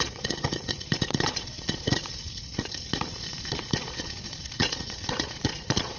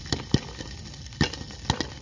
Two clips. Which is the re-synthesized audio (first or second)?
first